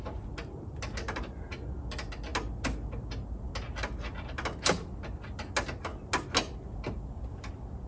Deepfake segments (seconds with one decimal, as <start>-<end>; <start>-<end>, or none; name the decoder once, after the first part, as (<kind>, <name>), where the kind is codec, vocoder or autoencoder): none